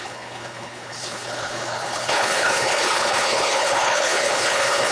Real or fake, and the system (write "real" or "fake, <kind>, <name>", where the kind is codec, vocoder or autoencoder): fake, codec, HILCodec